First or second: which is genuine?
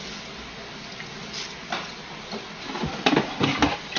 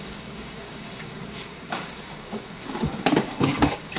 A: first